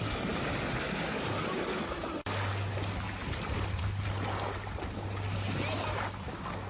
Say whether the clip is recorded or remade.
recorded